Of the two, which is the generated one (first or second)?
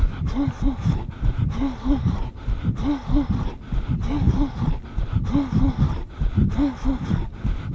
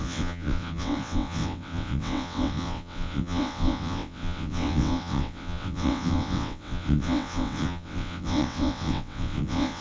second